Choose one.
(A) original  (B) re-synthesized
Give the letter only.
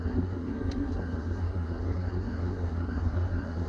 B